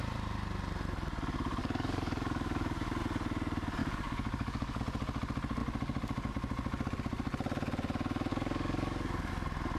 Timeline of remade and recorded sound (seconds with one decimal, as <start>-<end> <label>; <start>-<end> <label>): 0.0-1.6 recorded; 1.6-3.0 remade; 3.0-3.8 recorded; 3.8-4.8 remade; 4.8-8.3 recorded; 8.3-9.3 remade; 9.3-9.8 recorded